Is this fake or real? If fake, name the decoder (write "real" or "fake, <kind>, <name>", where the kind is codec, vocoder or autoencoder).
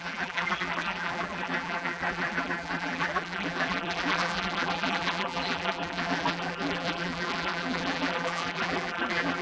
fake, vocoder, BigVGAN v2